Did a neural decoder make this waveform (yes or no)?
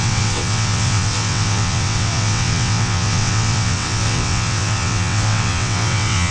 yes